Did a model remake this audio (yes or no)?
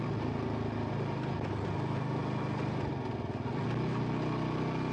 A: no